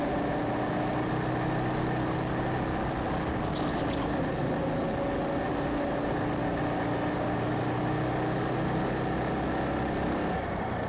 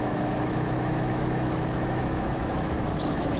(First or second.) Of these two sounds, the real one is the first